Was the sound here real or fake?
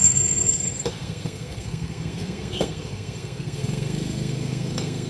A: fake